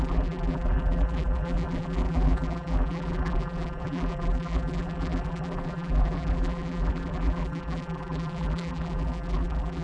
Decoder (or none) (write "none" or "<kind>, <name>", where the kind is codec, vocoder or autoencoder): vocoder, BigVGAN v2